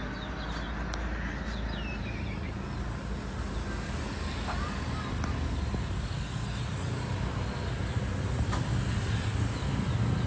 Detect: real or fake real